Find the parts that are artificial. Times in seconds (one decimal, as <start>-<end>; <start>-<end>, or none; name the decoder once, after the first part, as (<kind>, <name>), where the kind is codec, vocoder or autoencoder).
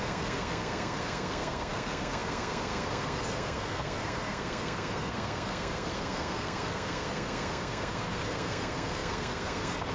0.0-9.9 (codec, SNAC)